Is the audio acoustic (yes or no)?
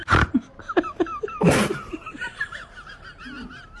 no